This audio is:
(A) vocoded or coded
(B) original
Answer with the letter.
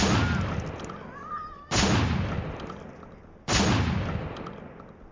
B